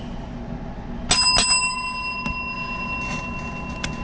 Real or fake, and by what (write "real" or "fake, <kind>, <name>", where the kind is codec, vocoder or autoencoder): real